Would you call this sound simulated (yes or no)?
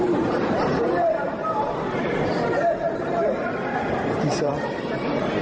yes